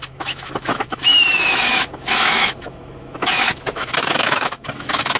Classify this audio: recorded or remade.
remade